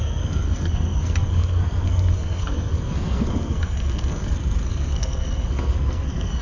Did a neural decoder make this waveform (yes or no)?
yes